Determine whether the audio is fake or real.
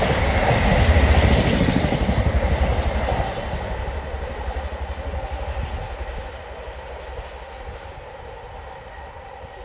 real